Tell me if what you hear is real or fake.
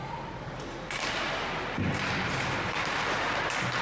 real